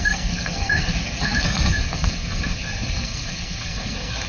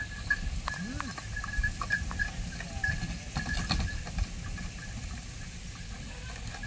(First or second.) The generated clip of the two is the first